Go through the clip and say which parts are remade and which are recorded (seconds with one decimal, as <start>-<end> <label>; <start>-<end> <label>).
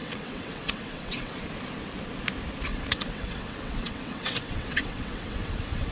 0.0-1.3 remade; 1.3-2.7 recorded; 2.7-5.9 remade